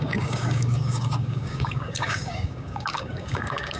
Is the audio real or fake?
fake